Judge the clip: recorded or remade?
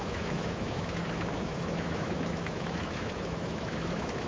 remade